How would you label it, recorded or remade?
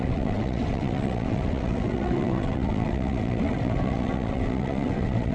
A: remade